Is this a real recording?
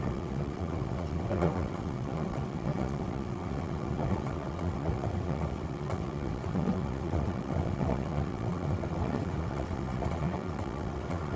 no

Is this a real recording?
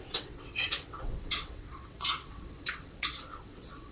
no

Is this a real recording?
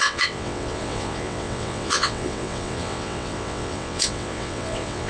no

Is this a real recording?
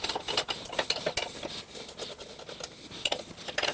yes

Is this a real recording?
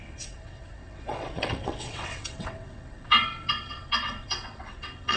no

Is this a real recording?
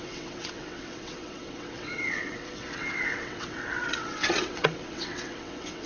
no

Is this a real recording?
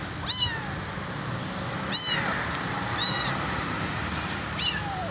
yes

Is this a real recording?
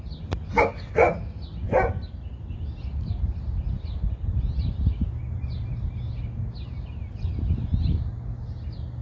yes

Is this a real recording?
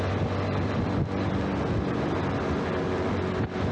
yes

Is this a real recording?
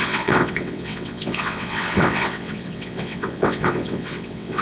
no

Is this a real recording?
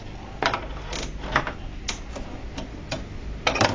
yes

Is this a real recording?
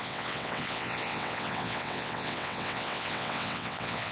no